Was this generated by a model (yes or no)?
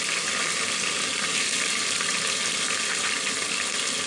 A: no